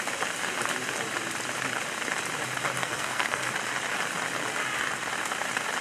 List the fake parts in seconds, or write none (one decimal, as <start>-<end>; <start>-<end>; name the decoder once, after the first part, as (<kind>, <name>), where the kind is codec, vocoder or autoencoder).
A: 2.8-3.5 (codec, SNAC)